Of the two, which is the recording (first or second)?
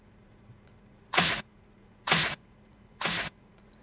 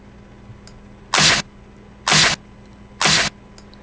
second